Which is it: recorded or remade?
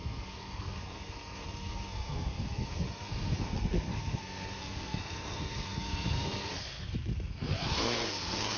remade